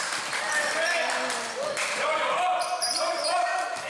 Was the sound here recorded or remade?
remade